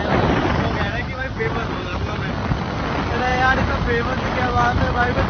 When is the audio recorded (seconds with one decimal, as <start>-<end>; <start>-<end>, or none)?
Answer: 0.0-5.3